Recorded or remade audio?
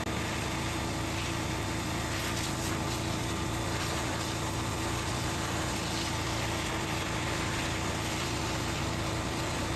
recorded